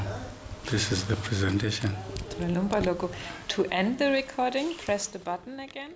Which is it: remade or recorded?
recorded